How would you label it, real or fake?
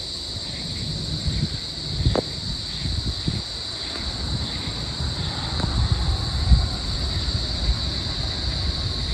fake